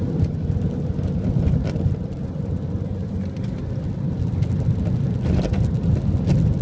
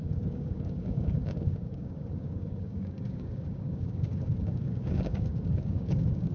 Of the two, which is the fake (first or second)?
second